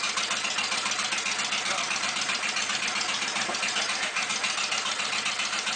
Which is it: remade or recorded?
remade